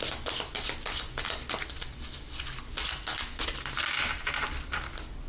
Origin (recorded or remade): recorded